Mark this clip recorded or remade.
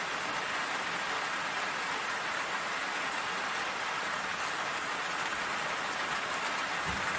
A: recorded